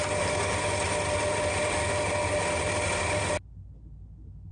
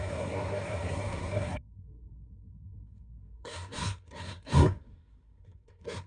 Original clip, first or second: first